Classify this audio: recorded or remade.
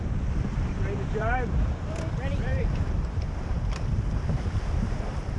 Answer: remade